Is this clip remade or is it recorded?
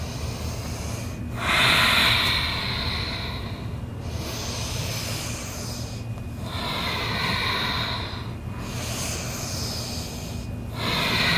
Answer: recorded